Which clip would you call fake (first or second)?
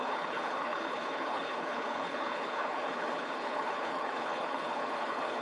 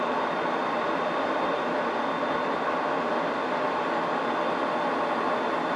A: first